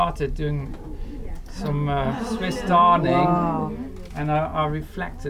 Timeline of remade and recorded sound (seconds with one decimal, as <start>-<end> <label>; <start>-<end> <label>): 0.0-5.3 recorded